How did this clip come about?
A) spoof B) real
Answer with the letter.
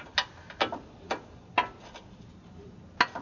B